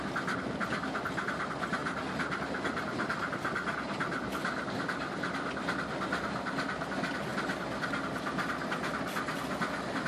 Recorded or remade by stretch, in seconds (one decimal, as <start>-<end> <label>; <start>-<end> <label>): 0.0-10.1 recorded